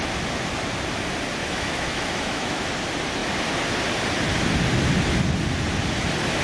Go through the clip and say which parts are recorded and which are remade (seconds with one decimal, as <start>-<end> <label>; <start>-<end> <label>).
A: 0.0-1.4 recorded; 1.4-2.7 remade; 2.7-6.4 recorded